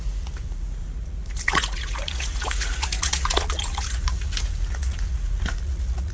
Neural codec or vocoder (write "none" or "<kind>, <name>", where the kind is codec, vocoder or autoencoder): vocoder, Vocos